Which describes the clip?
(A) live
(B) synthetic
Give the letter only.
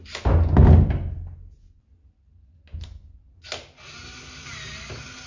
A